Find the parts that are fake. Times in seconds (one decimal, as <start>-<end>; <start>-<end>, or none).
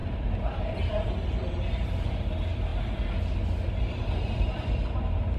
none